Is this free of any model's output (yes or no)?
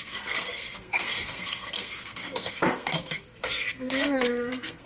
no